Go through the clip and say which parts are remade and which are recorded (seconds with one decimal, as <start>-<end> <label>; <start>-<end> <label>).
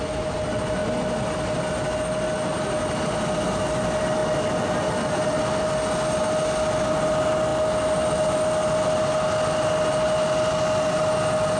0.0-11.6 recorded